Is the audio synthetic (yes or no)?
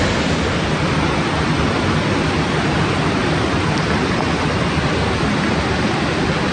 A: no